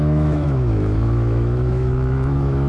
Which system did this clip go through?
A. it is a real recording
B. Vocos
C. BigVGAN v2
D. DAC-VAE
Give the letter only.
D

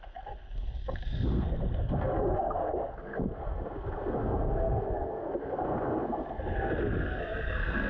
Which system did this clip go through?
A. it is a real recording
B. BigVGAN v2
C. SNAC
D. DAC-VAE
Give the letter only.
C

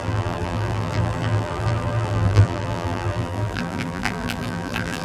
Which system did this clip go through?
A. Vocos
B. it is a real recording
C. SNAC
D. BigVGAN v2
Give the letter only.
D